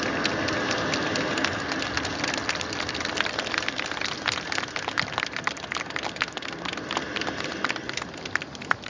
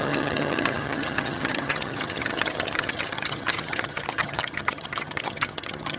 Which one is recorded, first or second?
first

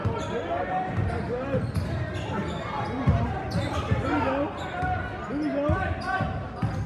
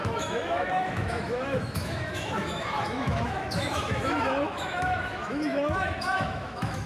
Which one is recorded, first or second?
first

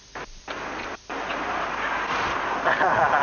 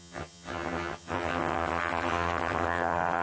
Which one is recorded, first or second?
first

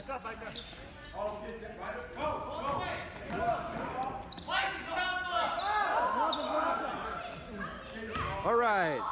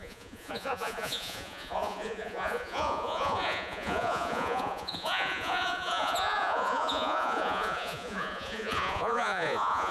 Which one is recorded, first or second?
first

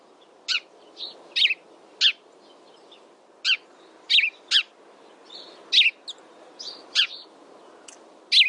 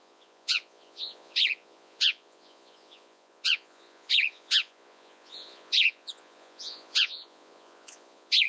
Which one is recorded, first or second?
first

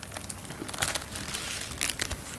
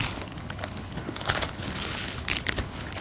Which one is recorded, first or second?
first